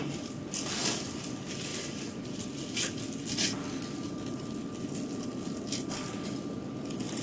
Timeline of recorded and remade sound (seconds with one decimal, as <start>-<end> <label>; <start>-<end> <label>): 0.0-7.2 recorded

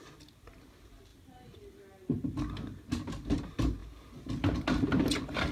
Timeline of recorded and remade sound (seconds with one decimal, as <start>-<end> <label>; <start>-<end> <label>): 0.0-5.5 recorded

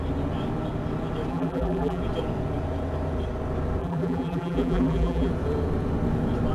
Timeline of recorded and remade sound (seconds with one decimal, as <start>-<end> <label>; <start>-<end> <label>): 0.0-1.3 recorded; 1.3-2.0 remade; 2.0-3.8 recorded; 3.8-5.3 remade; 5.3-6.5 recorded

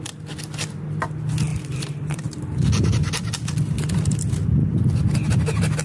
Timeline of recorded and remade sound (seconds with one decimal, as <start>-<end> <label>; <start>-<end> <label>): 0.0-1.5 recorded; 1.5-2.4 remade; 2.4-5.8 recorded

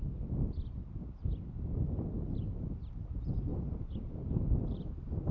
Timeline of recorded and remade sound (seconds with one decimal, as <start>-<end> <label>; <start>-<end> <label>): 0.0-3.5 recorded; 3.5-4.3 remade; 4.3-5.3 recorded

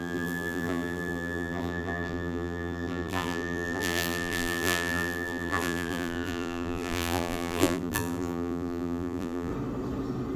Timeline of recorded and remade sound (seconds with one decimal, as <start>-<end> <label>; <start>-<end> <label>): 0.0-9.5 remade; 9.5-10.4 recorded